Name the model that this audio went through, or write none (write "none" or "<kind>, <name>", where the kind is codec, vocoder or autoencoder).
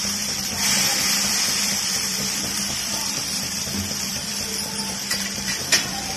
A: vocoder, BigVGAN v2